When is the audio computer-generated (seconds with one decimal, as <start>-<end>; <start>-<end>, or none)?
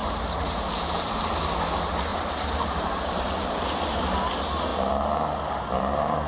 0.0-1.2; 2.1-4.0